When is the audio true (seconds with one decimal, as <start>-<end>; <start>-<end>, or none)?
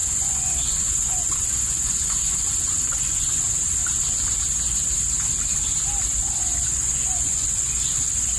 3.4-6.6; 7.9-8.4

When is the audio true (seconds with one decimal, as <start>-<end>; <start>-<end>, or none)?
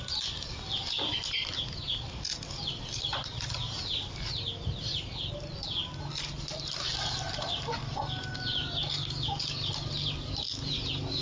0.0-11.2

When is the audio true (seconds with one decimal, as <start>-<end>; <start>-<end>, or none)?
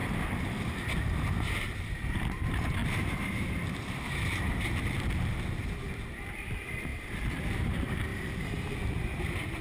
8.1-8.9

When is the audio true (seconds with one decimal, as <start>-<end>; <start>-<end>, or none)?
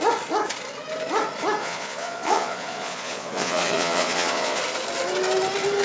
0.0-1.6; 4.6-5.8